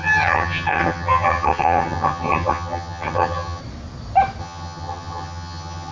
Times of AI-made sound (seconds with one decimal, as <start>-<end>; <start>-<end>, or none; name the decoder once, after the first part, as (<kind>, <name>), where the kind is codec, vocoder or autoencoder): 0.0-3.6 (vocoder, HiFi-GAN); 4.4-5.9